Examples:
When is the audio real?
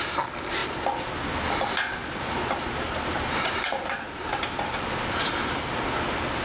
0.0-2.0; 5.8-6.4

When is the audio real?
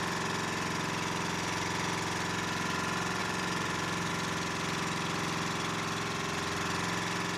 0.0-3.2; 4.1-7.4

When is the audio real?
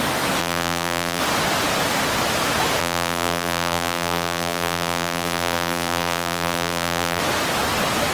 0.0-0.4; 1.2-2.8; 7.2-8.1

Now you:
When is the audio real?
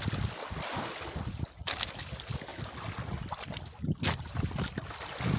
0.0-5.4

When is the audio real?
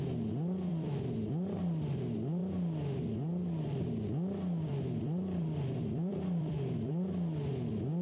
0.0-0.7; 1.6-4.7; 6.9-8.0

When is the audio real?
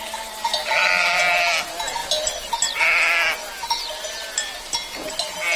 0.0-5.6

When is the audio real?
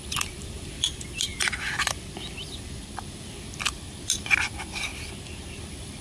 none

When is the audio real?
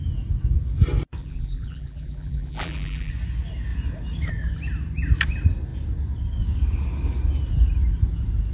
0.0-1.2; 3.1-8.5